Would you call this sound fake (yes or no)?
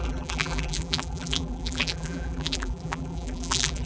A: yes